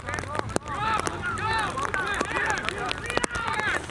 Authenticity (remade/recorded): remade